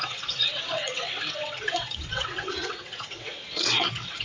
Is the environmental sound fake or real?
fake